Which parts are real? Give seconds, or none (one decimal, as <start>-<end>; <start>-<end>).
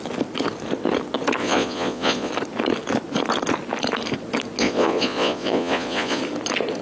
0.0-1.4; 2.3-4.6; 6.2-6.8